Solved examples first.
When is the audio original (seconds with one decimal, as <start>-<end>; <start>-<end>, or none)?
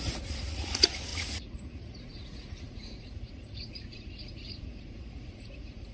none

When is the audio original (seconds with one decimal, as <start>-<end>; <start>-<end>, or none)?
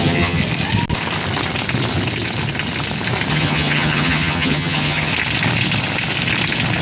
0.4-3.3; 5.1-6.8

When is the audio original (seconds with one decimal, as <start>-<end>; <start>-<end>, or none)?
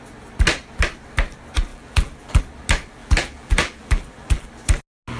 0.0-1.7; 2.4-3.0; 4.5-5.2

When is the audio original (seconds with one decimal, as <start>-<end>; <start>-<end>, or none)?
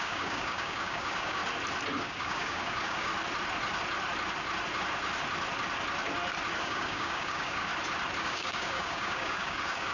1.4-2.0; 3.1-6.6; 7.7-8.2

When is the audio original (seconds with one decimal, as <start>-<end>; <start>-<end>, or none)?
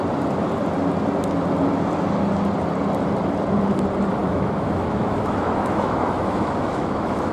0.0-4.2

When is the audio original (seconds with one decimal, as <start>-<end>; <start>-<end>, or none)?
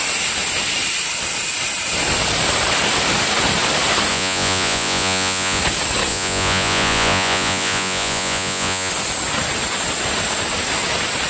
0.0-4.1; 5.6-6.1; 8.9-11.3